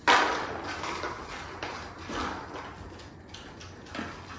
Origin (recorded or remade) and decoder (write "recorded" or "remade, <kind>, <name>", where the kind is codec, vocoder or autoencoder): recorded